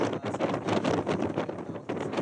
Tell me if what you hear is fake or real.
real